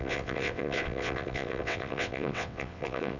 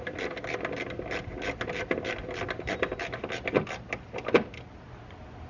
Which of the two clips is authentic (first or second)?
second